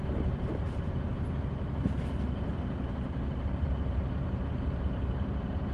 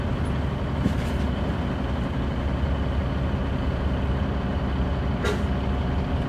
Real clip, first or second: second